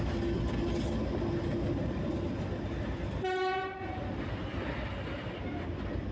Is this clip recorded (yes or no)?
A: yes